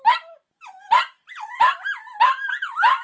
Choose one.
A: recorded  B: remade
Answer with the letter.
A